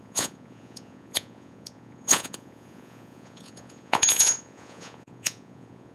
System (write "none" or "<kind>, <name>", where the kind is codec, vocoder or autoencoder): vocoder, Vocos